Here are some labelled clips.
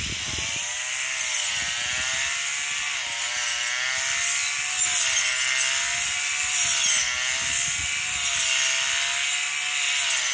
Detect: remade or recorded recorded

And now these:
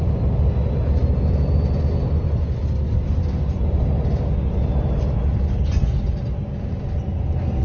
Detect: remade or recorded recorded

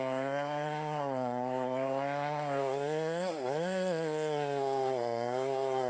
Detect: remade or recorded remade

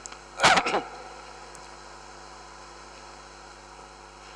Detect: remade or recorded recorded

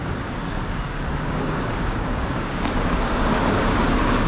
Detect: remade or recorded remade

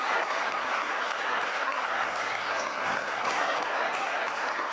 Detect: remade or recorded remade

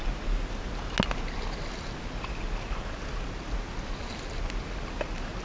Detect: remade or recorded recorded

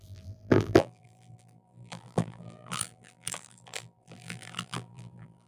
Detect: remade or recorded remade